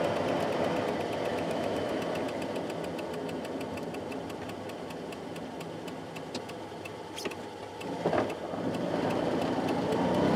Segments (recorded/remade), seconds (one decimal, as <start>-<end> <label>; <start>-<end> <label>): 0.0-1.3 recorded; 1.3-1.9 remade; 1.9-10.4 recorded

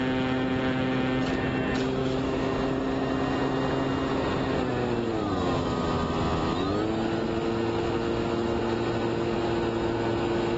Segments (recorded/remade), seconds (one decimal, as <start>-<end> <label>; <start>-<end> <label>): 0.0-2.0 recorded; 2.0-2.5 remade; 2.5-10.6 recorded

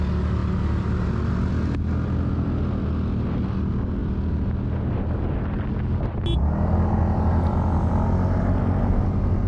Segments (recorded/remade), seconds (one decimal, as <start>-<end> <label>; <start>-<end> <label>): 0.0-9.5 recorded

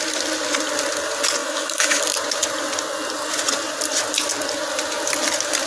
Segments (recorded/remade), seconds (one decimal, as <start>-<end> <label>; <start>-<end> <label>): 0.0-1.4 recorded; 1.4-2.0 remade; 2.0-5.7 recorded